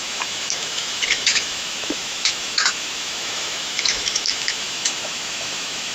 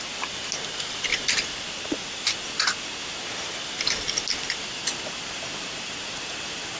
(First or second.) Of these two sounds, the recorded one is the second